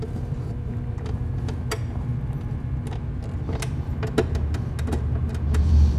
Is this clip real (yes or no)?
yes